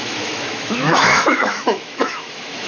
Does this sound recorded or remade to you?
remade